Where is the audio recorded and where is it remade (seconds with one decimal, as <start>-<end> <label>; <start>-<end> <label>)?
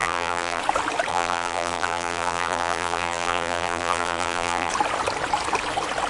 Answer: 0.0-0.6 remade; 0.6-1.1 recorded; 1.1-4.7 remade; 4.7-6.1 recorded